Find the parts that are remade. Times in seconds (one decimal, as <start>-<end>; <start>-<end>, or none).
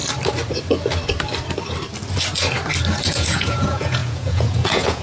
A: 3.0-5.0